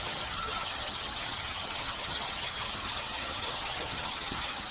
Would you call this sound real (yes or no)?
no